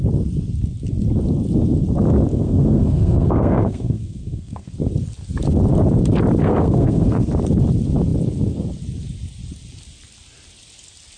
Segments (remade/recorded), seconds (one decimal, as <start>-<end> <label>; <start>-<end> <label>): 0.0-2.3 recorded; 2.3-4.7 remade; 4.7-6.4 recorded; 6.4-7.3 remade; 7.3-11.2 recorded